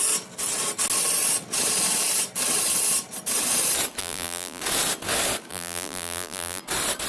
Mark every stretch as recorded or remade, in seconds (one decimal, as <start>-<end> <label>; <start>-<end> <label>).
0.0-4.0 recorded; 4.0-4.6 remade; 4.6-5.5 recorded; 5.5-6.6 remade; 6.6-7.1 recorded